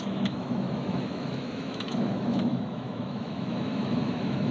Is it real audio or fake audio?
fake